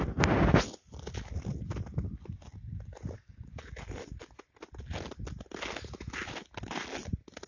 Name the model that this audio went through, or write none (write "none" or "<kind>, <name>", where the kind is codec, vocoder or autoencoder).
none